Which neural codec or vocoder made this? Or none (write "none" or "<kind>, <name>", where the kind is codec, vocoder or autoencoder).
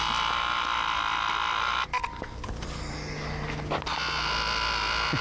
none